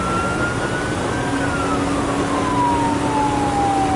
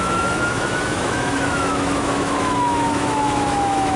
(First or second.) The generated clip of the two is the second